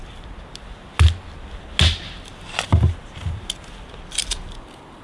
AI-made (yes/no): no